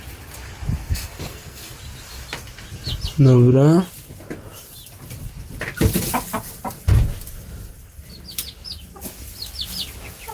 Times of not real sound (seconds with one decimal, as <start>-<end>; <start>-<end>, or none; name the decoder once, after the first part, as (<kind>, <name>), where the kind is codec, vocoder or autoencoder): 0.8-1.7 (codec, SNAC)

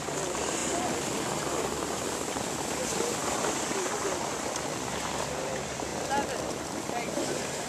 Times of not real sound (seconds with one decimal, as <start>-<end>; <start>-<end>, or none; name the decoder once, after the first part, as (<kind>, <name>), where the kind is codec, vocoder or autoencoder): 0.0-0.6 (vocoder, BigVGAN v2); 1.5-7.7

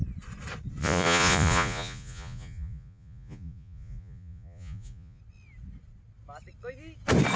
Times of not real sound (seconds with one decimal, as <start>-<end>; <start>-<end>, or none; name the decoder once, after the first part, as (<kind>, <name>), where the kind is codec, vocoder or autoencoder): 0.8-5.2 (vocoder, Vocos)

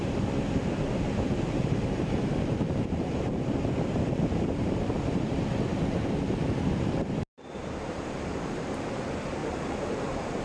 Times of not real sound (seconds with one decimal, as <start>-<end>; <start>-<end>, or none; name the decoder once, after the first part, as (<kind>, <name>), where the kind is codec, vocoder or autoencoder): 0.0-5.3 (vocoder, BigVGAN v2); 5.7-6.7; 7.6-8.8; 9.4-10.4

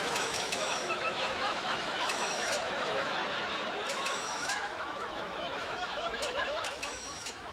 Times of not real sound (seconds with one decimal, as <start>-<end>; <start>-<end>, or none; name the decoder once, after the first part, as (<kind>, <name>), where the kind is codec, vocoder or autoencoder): 0.0-3.2 (autoencoder, DAC-VAE); 3.9-7.5

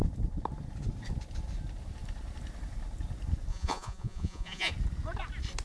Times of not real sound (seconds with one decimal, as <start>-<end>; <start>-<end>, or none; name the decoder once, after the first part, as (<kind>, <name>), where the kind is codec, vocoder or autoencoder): 3.5-4.7 (vocoder, Vocos)

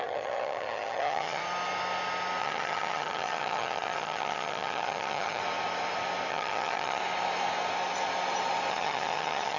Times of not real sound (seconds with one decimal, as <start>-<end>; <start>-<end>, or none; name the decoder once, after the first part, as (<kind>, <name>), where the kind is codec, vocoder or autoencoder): 0.0-1.4 (vocoder, HiFi-GAN); 2.4-5.4; 6.3-7.0; 8.7-9.6